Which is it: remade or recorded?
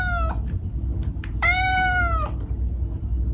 recorded